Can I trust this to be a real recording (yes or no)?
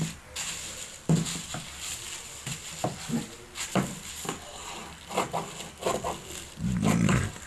yes